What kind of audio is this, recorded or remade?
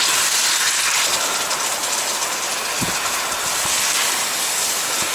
recorded